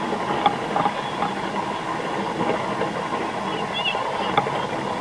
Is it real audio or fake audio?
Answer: real